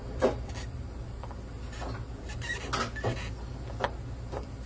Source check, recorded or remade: recorded